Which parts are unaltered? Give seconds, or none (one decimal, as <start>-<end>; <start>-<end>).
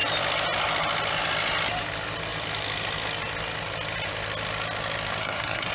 0.0-5.2